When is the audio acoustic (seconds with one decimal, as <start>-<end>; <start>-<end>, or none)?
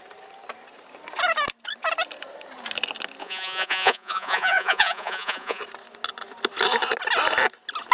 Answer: 0.0-3.2; 5.6-7.9